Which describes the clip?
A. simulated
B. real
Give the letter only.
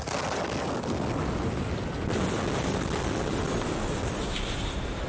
B